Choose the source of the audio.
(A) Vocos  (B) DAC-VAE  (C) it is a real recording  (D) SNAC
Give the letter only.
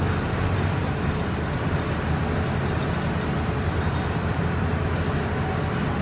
C